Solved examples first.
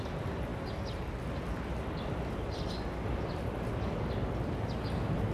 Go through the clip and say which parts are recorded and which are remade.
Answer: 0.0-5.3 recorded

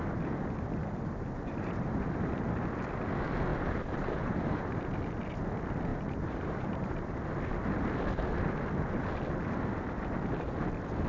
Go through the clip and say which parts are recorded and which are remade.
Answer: 0.0-0.8 recorded; 0.8-2.1 remade; 2.1-3.5 recorded; 3.5-4.8 remade; 4.8-5.9 recorded; 5.9-7.3 remade; 7.3-11.1 recorded

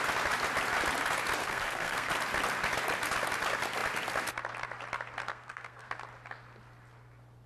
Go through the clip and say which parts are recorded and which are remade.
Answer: 0.0-1.4 recorded; 1.4-2.1 remade; 2.1-5.3 recorded; 5.3-5.9 remade; 5.9-7.5 recorded

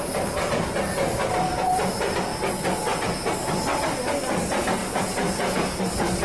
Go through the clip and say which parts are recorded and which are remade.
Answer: 0.0-4.8 recorded; 4.8-5.8 remade; 5.8-6.2 recorded

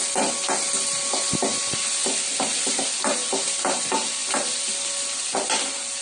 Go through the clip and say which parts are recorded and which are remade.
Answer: 0.0-6.0 recorded